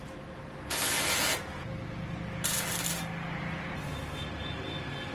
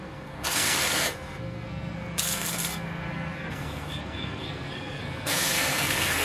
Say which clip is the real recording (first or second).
first